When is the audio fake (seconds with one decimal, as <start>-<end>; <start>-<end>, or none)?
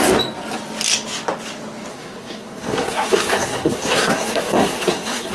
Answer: 1.9-5.3